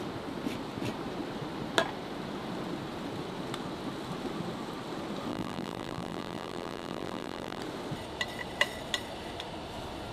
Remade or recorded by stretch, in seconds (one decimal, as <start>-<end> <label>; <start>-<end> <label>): 0.0-5.3 recorded; 5.3-7.6 remade; 7.6-10.1 recorded